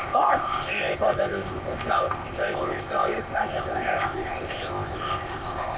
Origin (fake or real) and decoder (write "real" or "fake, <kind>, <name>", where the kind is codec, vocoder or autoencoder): fake, codec, ZipCodec